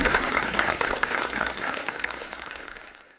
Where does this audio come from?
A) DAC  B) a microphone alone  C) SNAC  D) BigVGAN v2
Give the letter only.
C